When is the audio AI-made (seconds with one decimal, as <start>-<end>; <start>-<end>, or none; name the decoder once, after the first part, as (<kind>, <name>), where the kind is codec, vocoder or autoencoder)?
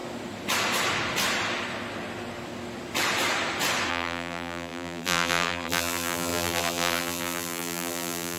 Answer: 3.9-8.4 (vocoder, BigVGAN v2)